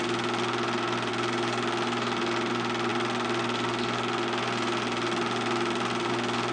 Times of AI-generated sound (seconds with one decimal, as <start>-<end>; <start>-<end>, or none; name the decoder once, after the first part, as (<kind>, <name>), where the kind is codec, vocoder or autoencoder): none